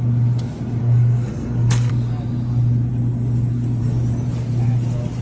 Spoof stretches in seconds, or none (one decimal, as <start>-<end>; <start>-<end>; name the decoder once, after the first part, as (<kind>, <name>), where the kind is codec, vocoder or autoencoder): 0.8-1.9 (codec, SNAC)